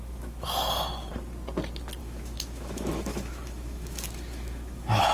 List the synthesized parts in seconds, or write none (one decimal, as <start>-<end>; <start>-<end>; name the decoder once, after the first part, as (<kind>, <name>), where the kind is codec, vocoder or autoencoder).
0.0-1.1 (autoencoder, DAC-VAE); 2.0-5.1